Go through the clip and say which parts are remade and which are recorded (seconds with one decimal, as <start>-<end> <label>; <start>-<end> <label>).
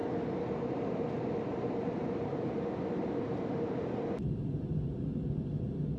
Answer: 0.0-6.0 recorded